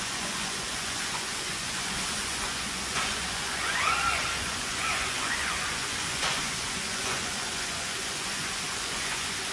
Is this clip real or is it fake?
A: fake